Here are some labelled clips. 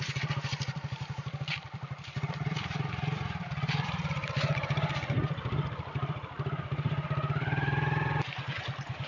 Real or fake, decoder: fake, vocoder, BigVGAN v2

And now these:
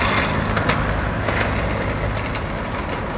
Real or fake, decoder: real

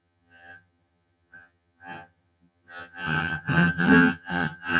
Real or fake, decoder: fake, vocoder, HiFi-GAN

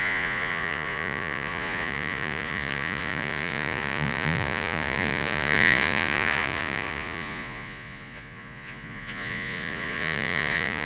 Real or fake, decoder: fake, vocoder, Vocos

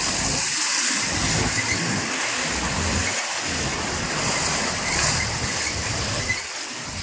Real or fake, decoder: real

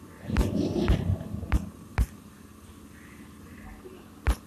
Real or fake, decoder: real